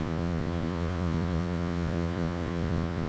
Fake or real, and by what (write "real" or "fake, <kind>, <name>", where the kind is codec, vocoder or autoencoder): fake, vocoder, Vocos